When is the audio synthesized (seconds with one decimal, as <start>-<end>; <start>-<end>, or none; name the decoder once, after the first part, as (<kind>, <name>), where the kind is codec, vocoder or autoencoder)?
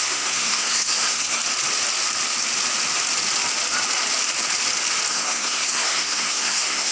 0.0-1.4 (codec, SNAC); 5.1-6.9